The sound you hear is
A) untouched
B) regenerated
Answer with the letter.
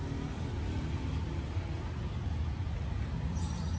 A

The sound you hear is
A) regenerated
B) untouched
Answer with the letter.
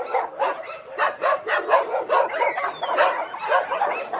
A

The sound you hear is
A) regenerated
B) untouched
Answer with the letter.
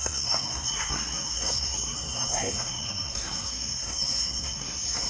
A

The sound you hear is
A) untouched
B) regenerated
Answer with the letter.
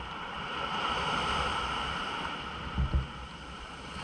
B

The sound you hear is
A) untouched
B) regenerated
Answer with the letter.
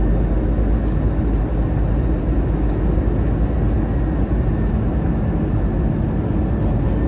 A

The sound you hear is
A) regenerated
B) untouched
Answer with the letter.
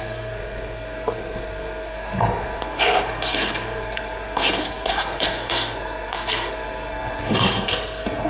A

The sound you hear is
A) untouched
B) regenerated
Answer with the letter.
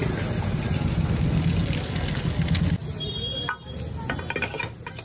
A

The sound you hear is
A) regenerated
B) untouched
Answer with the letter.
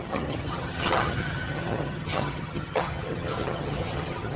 A